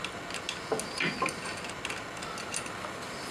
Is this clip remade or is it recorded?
recorded